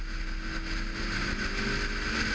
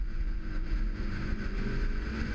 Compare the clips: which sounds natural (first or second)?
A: first